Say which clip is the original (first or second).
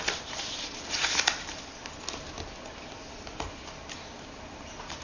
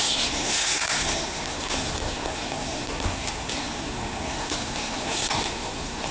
first